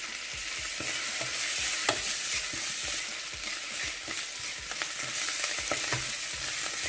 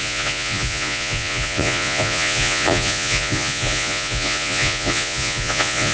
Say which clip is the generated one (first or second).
second